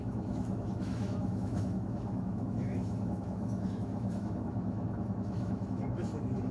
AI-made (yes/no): yes